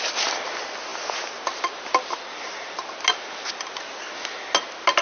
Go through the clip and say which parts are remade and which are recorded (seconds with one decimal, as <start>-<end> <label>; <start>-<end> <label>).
0.0-5.0 recorded